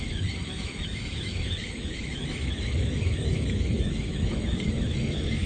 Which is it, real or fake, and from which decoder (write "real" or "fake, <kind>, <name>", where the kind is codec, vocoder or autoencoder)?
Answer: fake, autoencoder, DAC-VAE